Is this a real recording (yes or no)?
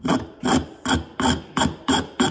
yes